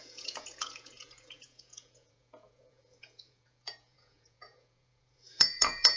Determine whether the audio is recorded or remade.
remade